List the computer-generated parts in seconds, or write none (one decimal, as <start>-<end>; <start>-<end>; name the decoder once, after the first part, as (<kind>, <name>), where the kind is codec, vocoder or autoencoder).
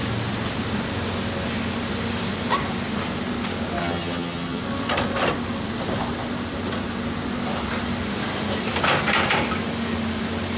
3.8-4.6 (vocoder, HiFi-GAN)